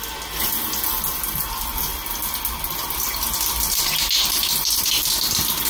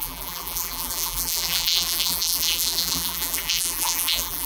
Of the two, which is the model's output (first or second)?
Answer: second